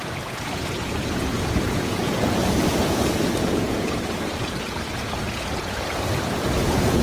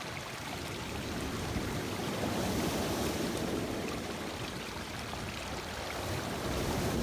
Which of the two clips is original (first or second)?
second